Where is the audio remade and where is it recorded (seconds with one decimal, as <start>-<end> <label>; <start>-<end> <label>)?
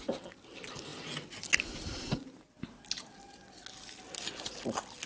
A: 0.0-5.1 recorded